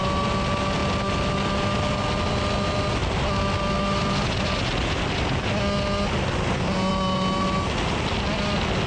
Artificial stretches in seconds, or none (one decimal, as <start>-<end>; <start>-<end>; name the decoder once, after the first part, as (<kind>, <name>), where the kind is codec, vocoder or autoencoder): none